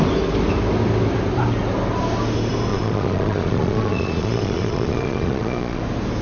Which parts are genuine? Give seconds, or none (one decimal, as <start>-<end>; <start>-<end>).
0.0-2.7; 5.8-6.2